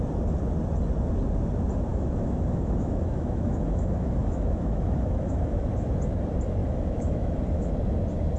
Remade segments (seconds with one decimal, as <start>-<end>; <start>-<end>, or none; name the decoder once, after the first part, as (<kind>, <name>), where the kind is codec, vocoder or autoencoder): 1.9-5.7 (autoencoder, DAC-VAE); 6.6-7.7